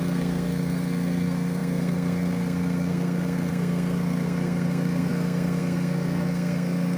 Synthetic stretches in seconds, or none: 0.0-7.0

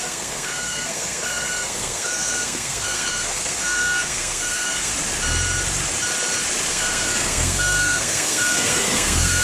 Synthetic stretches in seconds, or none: 0.0-4.9; 6.7-9.4

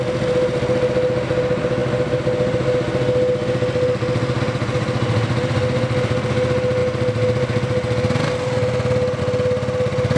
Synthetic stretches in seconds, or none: none

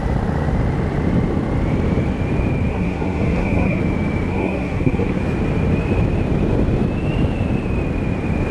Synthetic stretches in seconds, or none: 2.7-3.8; 4.3-5.2

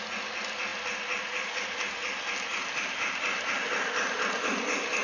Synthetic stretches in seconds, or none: none

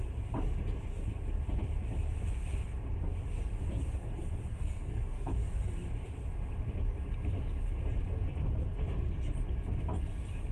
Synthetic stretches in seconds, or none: 4.5-5.3

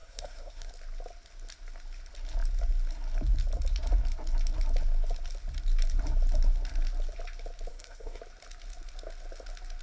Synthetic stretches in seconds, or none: 0.0-0.7; 7.7-8.2